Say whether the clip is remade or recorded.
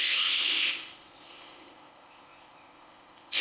remade